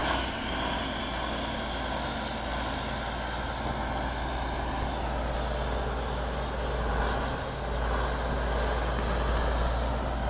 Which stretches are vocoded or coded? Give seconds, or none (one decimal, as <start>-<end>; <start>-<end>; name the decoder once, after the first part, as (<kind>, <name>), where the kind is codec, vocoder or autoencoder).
none